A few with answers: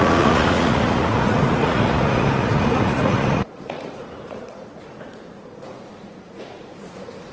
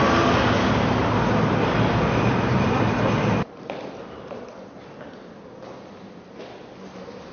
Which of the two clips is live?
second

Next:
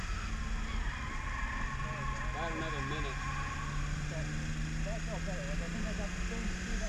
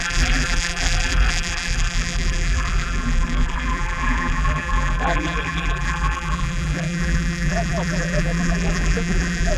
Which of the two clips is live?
first